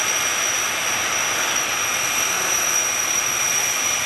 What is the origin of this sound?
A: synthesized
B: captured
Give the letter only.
B